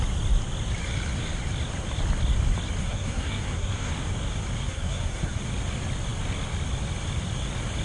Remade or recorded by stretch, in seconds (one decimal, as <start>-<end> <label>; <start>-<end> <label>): 0.0-2.8 recorded; 2.8-3.9 remade; 3.9-4.6 recorded; 4.6-5.4 remade; 5.4-7.8 recorded